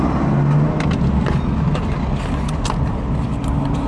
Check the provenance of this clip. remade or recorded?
recorded